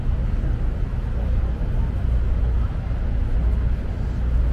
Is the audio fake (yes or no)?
no